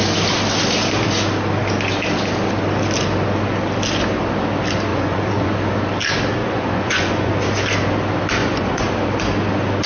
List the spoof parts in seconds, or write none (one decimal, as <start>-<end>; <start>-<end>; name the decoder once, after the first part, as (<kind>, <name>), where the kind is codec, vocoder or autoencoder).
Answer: 4.9-5.5 (vocoder, Vocos); 6.4-7.3; 8.4-8.9